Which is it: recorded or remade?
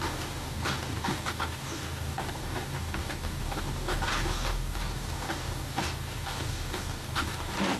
remade